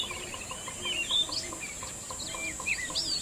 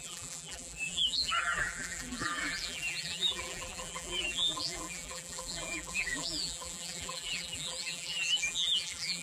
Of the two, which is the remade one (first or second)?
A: second